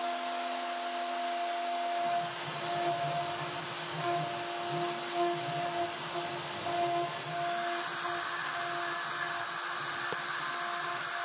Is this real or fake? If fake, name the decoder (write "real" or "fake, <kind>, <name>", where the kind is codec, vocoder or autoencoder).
real